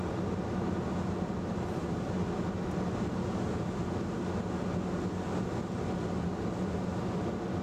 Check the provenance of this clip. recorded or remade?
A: recorded